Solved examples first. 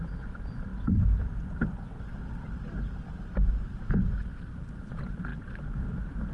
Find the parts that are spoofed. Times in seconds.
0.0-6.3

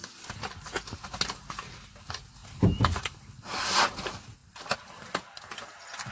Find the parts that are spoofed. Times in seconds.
none

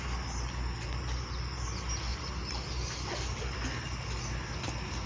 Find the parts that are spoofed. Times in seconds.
2.1-3.4

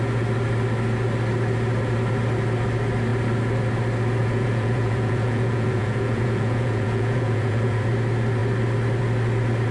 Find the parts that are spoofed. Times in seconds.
4.2-7.9

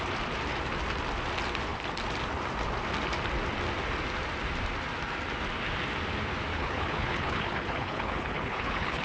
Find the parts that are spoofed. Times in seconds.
6.5-9.0

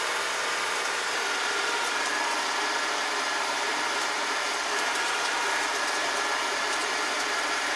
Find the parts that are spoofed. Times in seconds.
0.0-7.8

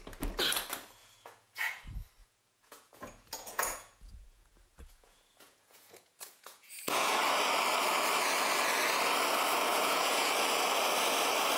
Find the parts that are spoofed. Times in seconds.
1.0-1.8; 2.2-7.2; 9.7-10.3